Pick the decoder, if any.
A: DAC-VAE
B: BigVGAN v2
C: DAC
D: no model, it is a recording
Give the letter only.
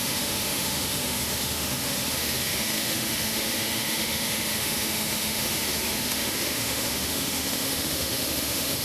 A